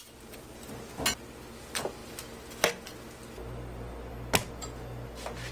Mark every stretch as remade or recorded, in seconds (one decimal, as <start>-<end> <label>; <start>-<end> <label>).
0.0-5.5 recorded